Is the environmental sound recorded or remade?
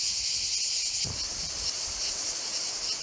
remade